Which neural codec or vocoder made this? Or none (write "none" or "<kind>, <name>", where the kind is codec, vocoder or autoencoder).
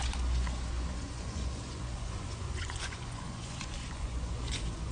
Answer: vocoder, Vocos